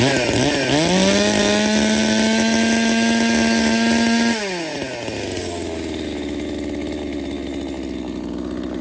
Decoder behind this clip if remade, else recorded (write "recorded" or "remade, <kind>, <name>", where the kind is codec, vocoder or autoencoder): recorded